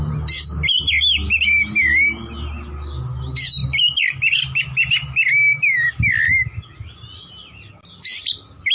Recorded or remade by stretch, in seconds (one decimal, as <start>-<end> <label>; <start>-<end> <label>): 0.0-8.7 recorded